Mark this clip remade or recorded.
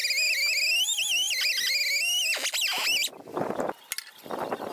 recorded